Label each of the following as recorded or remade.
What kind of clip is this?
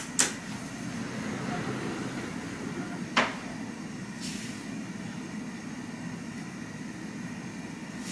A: recorded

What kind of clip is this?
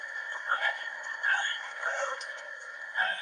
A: remade